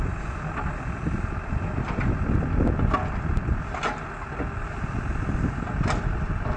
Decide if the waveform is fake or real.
real